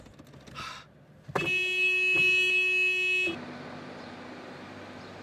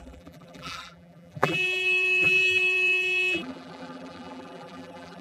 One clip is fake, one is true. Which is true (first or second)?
first